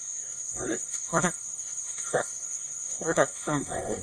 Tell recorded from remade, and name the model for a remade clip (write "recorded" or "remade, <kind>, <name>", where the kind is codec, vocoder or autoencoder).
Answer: remade, codec, SNAC